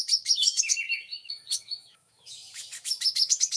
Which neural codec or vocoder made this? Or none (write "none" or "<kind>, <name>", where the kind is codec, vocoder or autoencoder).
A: autoencoder, DAC-VAE